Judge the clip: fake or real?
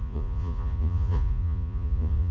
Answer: fake